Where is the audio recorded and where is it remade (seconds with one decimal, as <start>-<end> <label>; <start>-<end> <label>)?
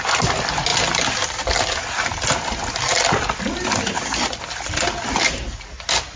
0.0-6.2 recorded